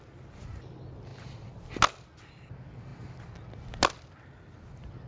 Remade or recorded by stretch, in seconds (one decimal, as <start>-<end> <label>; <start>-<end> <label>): 0.0-5.1 recorded